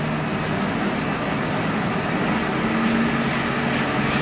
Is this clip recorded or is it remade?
recorded